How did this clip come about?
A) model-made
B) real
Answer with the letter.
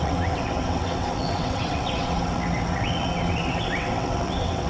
A